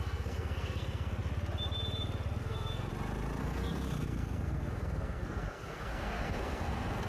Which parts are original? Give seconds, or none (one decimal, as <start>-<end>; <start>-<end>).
1.2-2.4; 2.9-3.4